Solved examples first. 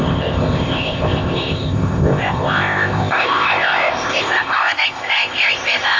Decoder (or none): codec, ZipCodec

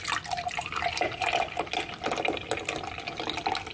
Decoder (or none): none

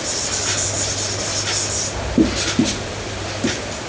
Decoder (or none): none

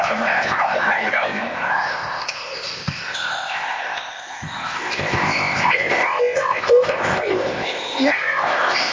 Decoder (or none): codec, ZipCodec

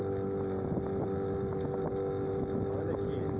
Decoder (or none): none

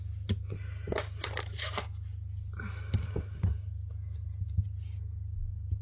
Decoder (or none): none